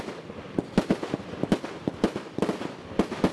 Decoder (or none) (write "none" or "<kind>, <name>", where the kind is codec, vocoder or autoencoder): none